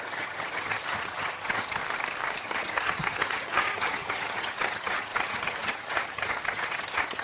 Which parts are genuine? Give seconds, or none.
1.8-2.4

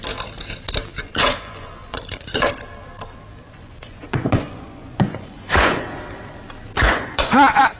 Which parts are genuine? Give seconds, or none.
0.0-0.9; 2.5-3.4; 6.0-6.8

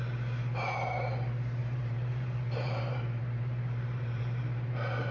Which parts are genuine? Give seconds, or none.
0.0-1.6

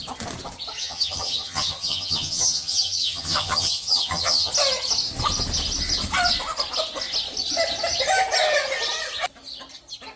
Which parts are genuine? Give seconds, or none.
0.0-0.8; 4.5-10.2

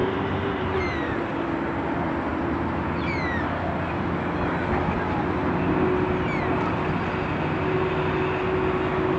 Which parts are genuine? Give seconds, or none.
0.8-2.3; 4.0-9.2